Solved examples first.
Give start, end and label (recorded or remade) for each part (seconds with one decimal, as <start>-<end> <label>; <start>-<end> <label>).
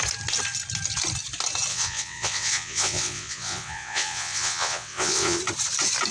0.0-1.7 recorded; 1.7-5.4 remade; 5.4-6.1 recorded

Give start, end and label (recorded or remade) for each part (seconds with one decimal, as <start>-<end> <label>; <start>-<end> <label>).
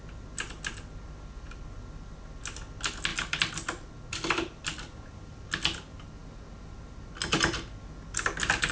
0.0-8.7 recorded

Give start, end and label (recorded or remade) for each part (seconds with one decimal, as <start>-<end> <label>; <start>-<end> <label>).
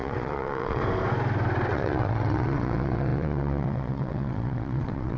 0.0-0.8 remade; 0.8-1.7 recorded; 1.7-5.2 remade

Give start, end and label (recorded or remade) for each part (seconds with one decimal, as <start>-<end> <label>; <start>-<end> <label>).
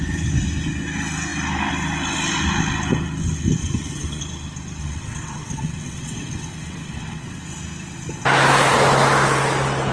0.0-3.6 recorded; 3.6-4.2 remade; 4.2-4.8 recorded; 4.8-7.4 remade; 7.4-9.9 recorded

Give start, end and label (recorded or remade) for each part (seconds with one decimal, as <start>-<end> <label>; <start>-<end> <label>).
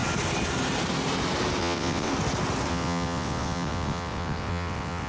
0.0-1.6 recorded; 1.6-2.1 remade; 2.1-2.7 recorded; 2.7-5.1 remade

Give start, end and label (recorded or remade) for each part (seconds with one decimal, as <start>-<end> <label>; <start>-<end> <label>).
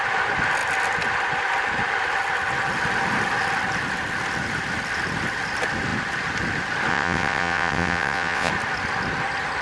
0.0-6.9 recorded; 6.9-8.5 remade; 8.5-9.6 recorded